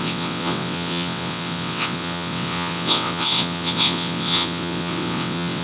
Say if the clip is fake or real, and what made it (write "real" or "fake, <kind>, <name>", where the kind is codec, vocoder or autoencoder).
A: fake, vocoder, WaveNeXt